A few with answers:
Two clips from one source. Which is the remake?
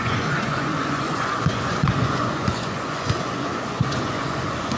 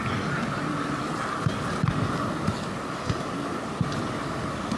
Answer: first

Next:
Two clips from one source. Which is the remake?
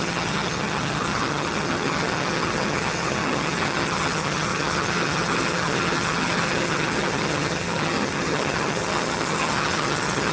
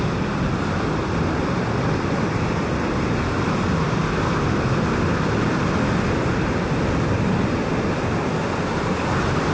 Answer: first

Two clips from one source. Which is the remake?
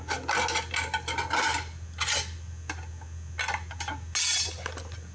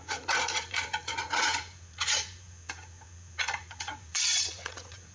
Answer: second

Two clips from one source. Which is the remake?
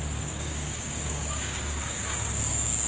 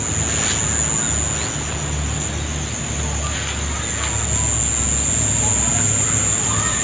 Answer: first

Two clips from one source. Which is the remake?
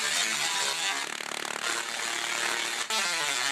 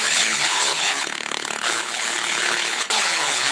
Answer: second